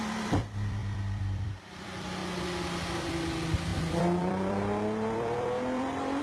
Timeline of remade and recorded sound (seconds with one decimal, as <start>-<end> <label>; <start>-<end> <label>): 0.0-2.2 remade; 2.2-3.1 recorded; 3.1-6.2 remade